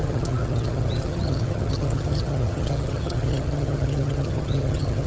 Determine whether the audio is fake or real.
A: fake